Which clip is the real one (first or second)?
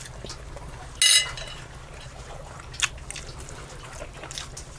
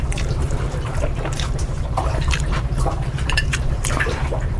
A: first